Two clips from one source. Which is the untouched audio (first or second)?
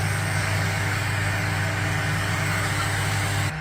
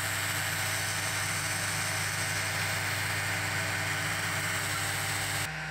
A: second